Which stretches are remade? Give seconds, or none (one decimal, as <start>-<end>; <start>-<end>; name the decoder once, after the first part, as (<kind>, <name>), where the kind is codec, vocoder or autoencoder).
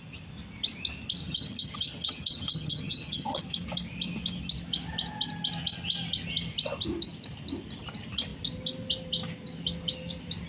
1.2-3.4 (vocoder, HiFi-GAN)